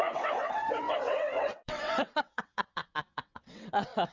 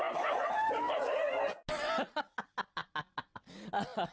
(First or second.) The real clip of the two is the second